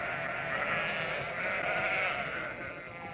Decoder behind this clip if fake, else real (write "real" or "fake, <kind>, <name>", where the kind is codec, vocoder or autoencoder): real